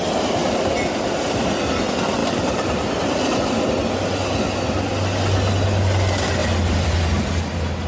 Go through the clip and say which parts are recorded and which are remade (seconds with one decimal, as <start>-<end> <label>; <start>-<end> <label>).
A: 0.0-0.4 recorded; 0.4-1.0 remade; 1.0-2.2 recorded; 2.2-3.9 remade; 3.9-6.4 recorded; 6.4-7.0 remade; 7.0-7.9 recorded